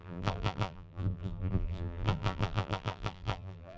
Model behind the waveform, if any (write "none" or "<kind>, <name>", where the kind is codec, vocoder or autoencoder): vocoder, BigVGAN v2